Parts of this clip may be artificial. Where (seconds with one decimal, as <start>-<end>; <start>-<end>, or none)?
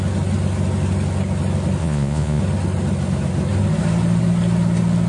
1.8-2.4